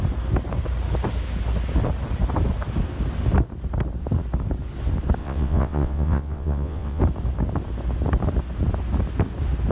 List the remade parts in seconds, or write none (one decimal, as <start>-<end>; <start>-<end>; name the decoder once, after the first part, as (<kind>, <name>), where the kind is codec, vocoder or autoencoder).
5.2-7.0 (vocoder, WaveNeXt)